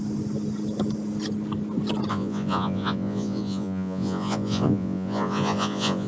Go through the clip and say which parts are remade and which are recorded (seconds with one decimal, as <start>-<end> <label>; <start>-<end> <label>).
0.0-2.1 recorded; 2.1-6.1 remade